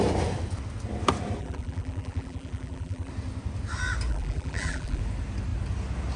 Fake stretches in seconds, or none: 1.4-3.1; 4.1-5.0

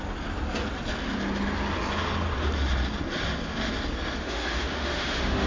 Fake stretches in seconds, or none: 4.2-5.5